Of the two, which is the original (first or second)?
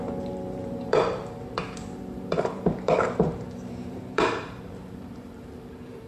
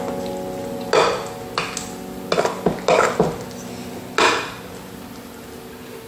second